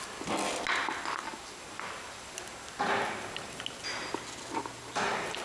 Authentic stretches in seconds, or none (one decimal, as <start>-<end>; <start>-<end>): 0.0-5.4